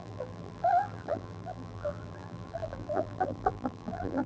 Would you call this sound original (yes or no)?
no